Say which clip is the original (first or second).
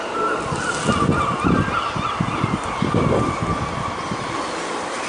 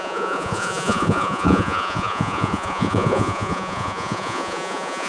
first